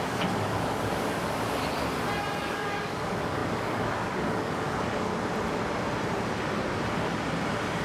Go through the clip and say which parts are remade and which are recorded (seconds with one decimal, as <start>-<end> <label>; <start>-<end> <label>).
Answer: 0.0-1.6 remade; 1.6-2.4 recorded; 2.4-5.1 remade; 5.1-7.8 recorded